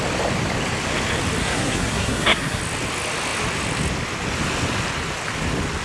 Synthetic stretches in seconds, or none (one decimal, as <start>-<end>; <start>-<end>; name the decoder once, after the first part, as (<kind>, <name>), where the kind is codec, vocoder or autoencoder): 1.4-2.6 (codec, SNAC)